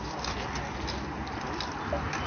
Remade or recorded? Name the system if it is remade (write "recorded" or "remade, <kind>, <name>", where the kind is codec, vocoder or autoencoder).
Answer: recorded